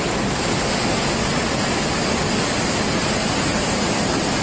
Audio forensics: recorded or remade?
recorded